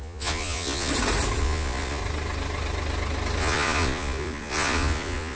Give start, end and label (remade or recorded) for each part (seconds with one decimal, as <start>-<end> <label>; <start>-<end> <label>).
0.0-0.9 remade; 0.9-1.4 recorded; 1.4-2.0 remade; 2.0-3.4 recorded; 3.4-5.4 remade